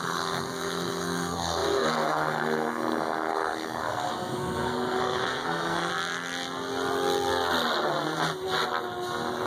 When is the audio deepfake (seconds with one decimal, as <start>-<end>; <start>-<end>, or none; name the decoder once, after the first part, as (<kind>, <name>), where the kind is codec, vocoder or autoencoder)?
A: 0.0-5.9 (codec, SNAC)